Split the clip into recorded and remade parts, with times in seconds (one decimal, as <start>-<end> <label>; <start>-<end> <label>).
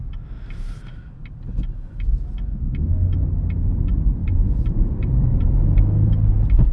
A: 0.0-4.2 recorded; 4.2-5.8 remade; 5.8-6.7 recorded